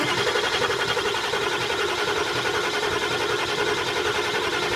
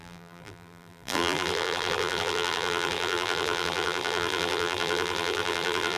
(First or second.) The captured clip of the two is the first